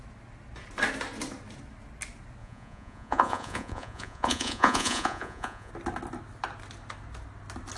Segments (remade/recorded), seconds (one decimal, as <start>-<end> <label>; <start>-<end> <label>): 0.0-2.4 recorded; 2.4-5.7 remade; 5.7-7.8 recorded